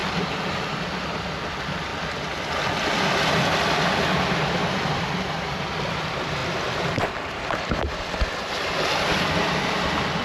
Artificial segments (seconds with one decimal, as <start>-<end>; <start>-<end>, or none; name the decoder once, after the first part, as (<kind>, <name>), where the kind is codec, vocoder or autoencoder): none